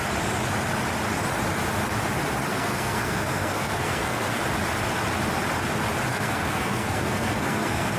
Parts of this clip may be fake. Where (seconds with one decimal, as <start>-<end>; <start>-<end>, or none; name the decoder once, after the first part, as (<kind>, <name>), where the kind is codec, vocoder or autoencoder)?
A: 2.5-4.4 (codec, SNAC); 6.1-8.0